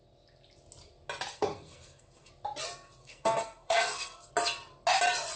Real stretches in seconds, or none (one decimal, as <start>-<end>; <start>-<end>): 0.0-1.3; 2.3-3.0; 4.3-5.4